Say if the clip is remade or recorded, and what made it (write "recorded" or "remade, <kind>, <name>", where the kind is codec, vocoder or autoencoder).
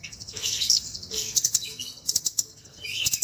remade, codec, SNAC